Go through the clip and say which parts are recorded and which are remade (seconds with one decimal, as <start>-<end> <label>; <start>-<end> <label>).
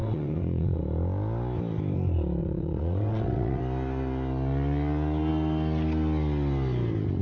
0.0-0.8 remade; 0.8-2.4 recorded; 2.4-3.6 remade; 3.6-7.2 recorded